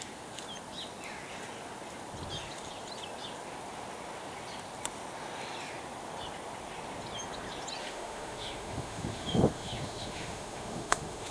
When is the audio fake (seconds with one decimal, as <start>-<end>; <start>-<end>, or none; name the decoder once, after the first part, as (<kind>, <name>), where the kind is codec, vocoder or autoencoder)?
7.8-11.3 (autoencoder, DAC-VAE)